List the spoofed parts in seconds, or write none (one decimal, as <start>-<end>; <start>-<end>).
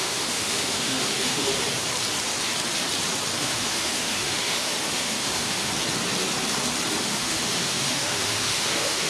0.0-1.5; 3.4-5.7; 7.0-9.1